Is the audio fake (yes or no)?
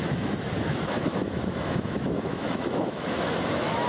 yes